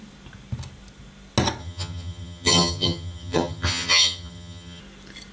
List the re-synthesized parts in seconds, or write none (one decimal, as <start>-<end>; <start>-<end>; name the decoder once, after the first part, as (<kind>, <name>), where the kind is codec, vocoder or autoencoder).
1.6-4.8 (vocoder, HiFi-GAN)